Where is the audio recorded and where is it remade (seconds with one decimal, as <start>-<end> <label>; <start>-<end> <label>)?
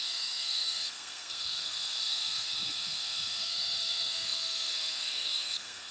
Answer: 0.0-5.9 remade